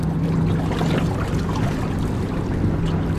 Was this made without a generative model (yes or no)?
yes